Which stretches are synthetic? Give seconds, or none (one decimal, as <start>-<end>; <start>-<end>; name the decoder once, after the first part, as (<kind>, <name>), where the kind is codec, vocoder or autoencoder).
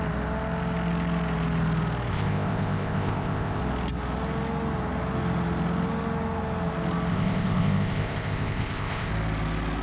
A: 2.1-3.6 (codec, ZipCodec); 7.1-9.1